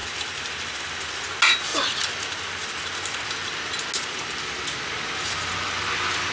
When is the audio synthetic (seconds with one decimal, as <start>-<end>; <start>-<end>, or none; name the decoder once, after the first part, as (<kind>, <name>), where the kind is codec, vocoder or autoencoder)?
none